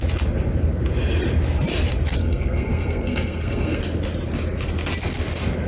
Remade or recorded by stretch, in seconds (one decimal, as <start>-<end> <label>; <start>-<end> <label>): 0.0-2.2 recorded; 2.2-3.8 remade; 3.8-5.7 recorded